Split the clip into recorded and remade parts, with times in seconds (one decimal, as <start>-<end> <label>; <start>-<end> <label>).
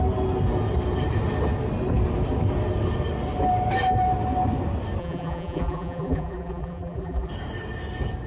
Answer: 0.0-5.0 recorded; 5.0-7.3 remade; 7.3-8.3 recorded